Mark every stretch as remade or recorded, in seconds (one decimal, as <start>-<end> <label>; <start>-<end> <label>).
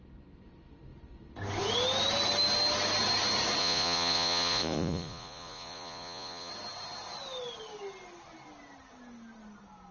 0.0-3.6 recorded; 3.6-6.5 remade; 6.5-9.9 recorded